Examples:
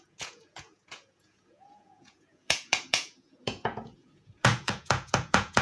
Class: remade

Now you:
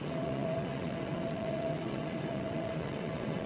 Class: remade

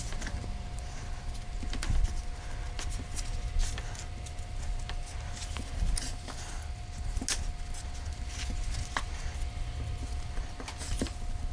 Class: recorded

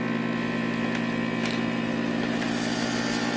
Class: recorded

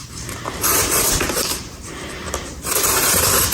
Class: remade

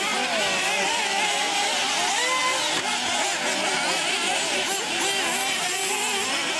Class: recorded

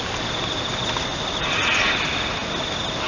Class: recorded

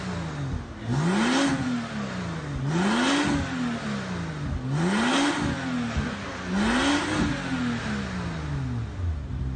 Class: recorded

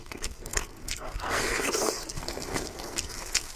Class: remade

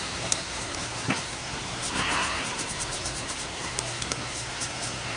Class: remade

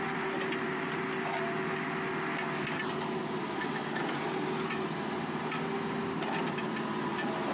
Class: recorded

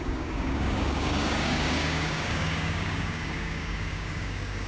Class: remade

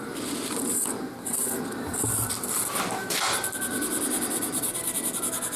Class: remade